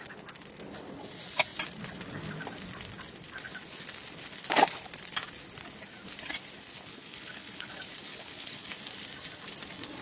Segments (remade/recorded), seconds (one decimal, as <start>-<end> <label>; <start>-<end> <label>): 0.0-6.9 recorded; 6.9-7.7 remade; 7.7-8.1 recorded; 8.1-8.7 remade; 8.7-10.0 recorded